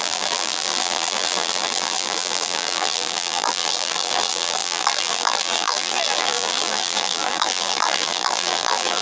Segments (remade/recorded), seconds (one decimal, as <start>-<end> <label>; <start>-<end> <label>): 0.0-9.0 remade